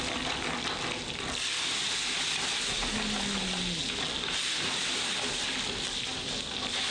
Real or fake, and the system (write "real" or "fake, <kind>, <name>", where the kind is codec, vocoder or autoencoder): real